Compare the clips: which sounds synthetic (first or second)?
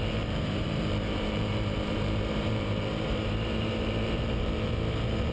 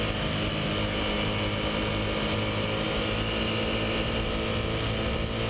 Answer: first